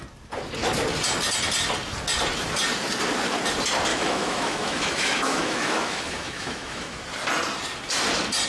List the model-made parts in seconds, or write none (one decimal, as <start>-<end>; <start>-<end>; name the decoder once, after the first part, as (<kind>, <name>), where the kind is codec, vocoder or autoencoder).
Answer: 3.9-7.0 (autoencoder, DAC-VAE)